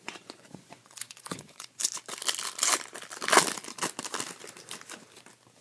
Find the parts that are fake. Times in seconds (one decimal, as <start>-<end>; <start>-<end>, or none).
0.0-1.8